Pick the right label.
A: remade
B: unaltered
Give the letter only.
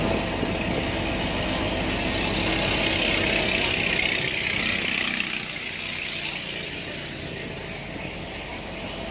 B